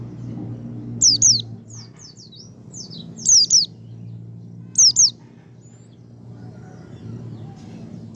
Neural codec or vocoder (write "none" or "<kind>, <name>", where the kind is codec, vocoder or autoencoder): none